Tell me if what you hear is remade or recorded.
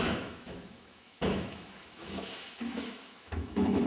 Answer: remade